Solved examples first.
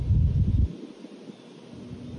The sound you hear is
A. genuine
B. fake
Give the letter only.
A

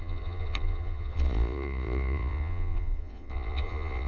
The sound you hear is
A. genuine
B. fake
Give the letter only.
B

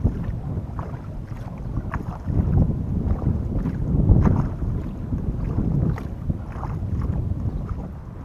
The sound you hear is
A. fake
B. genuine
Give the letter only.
B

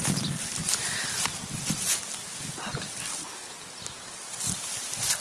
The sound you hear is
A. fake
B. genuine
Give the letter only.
B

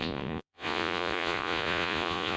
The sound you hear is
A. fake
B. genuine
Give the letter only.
A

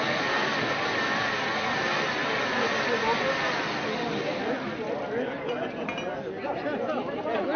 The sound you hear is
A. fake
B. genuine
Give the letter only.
B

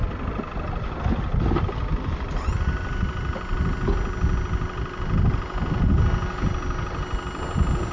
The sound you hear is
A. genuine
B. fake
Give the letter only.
A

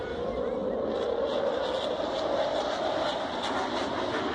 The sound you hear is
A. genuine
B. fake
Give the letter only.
A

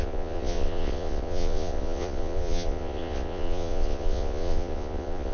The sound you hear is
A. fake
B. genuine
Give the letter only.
A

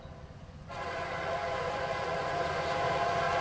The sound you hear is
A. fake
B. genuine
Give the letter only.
A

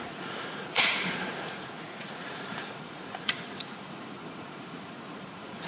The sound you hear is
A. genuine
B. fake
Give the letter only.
B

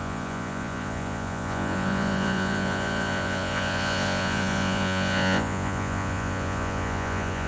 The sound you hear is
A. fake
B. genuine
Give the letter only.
A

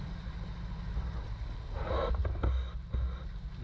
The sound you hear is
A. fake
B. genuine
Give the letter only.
B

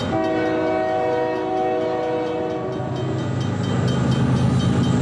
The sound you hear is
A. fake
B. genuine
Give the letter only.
B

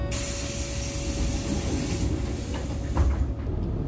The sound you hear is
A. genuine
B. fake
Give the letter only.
A